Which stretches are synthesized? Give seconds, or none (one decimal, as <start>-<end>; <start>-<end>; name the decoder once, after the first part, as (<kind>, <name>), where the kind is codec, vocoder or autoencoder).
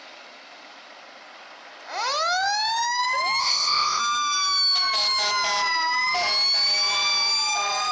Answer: 3.4-4.0 (codec, ZipCodec)